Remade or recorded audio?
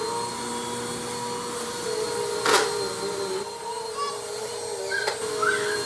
recorded